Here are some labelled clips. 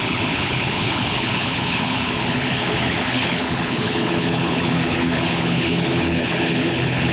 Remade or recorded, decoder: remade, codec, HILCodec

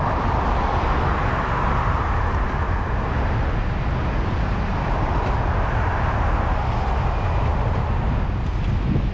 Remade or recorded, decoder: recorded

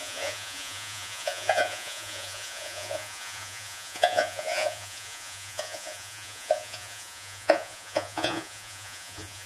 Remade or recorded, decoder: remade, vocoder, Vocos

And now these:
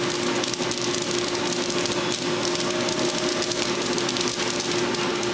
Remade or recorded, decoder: recorded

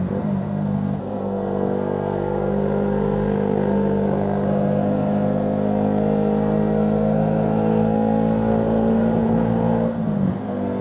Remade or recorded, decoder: remade, codec, SNAC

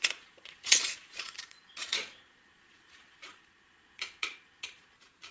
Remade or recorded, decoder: remade, vocoder, Vocos